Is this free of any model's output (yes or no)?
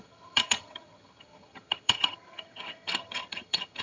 no